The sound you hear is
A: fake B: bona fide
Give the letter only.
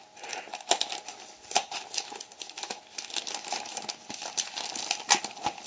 B